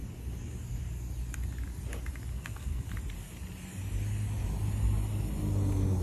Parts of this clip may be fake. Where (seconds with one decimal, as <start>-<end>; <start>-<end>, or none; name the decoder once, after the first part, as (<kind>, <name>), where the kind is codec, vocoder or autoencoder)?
2.3-2.9 (codec, SNAC)